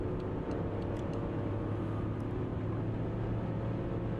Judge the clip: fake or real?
real